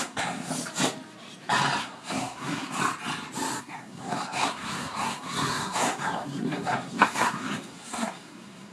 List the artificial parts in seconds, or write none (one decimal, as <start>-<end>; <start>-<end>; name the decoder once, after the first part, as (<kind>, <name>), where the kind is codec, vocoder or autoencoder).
0.0-0.5 (codec, SNAC); 1.8-2.8; 3.6-8.7